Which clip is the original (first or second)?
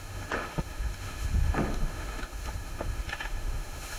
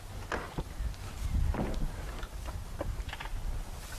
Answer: second